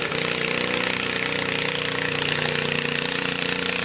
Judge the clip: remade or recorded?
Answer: remade